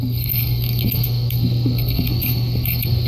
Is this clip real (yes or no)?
no